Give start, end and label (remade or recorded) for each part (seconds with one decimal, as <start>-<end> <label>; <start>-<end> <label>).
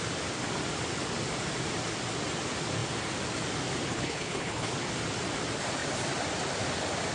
0.0-3.9 recorded; 3.9-4.7 remade; 4.7-7.1 recorded